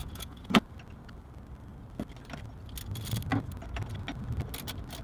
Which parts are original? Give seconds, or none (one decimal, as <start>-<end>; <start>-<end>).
0.6-5.0